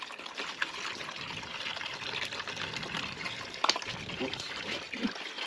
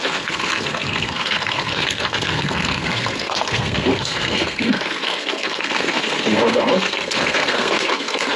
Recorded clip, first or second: first